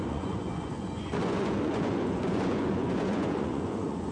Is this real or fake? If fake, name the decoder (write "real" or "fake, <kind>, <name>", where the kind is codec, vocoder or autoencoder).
fake, vocoder, Vocos